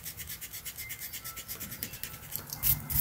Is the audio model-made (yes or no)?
no